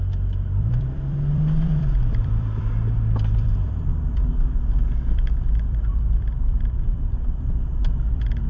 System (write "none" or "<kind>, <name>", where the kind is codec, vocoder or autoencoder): vocoder, BigVGAN v2